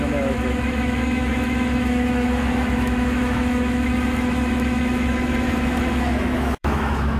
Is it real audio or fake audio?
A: fake